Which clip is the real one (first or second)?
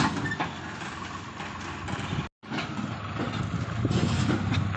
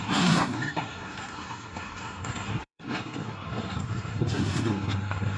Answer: first